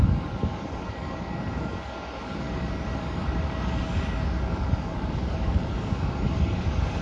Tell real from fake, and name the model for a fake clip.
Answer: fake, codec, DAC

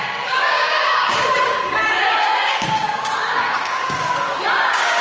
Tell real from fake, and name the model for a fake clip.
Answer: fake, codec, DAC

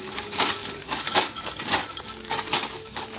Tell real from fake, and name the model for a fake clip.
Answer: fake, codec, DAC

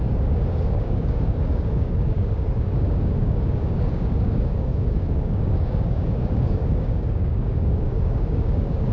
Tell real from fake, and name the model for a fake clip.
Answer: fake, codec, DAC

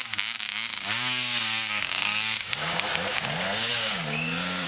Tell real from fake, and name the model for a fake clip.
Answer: fake, codec, DAC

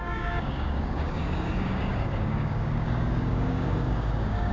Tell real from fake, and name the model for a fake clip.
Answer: fake, codec, DAC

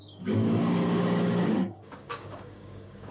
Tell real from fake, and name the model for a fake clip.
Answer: fake, codec, DAC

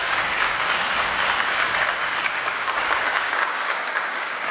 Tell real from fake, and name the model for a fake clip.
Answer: fake, codec, DAC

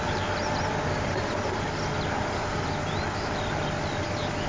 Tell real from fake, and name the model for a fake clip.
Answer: real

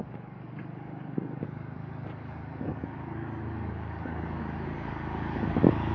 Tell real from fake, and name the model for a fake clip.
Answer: fake, codec, DAC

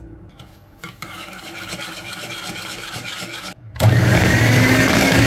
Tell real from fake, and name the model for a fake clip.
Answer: fake, codec, DAC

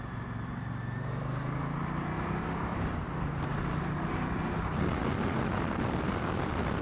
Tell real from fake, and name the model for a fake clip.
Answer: real